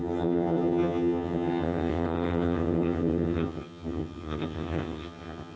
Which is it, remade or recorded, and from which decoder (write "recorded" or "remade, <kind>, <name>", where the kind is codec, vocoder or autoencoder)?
remade, vocoder, HiFi-GAN